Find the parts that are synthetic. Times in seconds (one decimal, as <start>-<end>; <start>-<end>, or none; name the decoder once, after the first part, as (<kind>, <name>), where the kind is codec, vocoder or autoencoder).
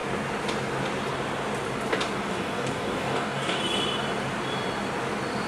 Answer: 2.3-3.6 (codec, DAC)